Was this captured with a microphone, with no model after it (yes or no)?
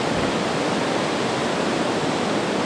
yes